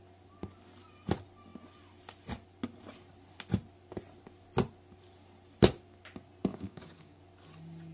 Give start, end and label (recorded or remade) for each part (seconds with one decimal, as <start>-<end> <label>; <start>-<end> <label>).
0.0-6.5 recorded; 6.5-7.2 remade; 7.2-7.9 recorded